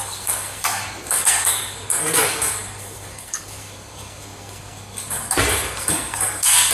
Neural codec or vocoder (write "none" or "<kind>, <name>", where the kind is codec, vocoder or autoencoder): codec, SNAC